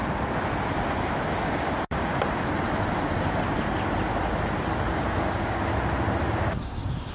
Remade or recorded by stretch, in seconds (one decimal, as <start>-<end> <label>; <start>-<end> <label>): 0.0-1.5 recorded; 1.5-2.1 remade; 2.1-5.2 recorded; 5.2-5.7 remade; 5.7-6.3 recorded; 6.3-7.1 remade